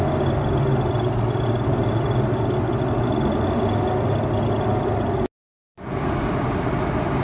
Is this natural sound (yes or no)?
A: yes